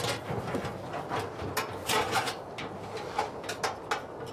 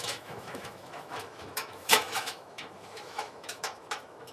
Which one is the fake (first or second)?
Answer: second